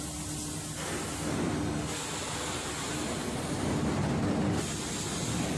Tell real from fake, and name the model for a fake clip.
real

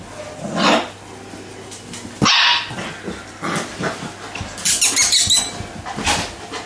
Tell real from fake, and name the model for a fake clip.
real